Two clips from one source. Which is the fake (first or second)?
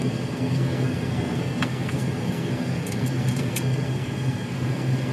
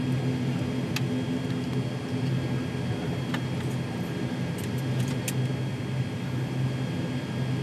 first